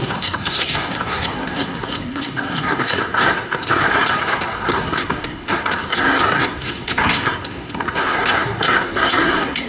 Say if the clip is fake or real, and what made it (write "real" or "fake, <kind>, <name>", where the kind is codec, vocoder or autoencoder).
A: fake, codec, SNAC